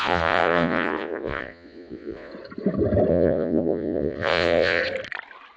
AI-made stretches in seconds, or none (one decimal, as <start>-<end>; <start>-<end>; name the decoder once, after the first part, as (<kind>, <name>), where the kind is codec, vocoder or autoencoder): 0.0-2.3 (vocoder, Vocos); 3.1-4.8